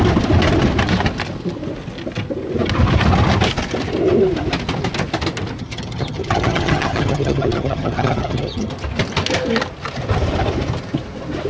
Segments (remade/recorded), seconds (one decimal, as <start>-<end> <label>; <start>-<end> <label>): 0.0-5.6 recorded; 5.6-8.7 remade; 8.7-11.5 recorded

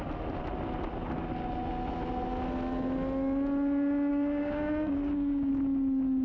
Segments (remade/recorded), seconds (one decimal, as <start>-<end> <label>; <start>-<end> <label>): 0.0-4.1 recorded; 4.1-5.5 remade; 5.5-6.2 recorded

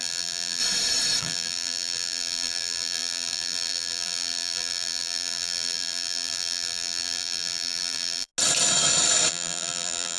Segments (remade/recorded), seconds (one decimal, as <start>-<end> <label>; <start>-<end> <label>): 0.0-0.6 remade; 0.6-1.2 recorded; 1.2-8.3 remade; 8.3-9.3 recorded; 9.3-10.2 remade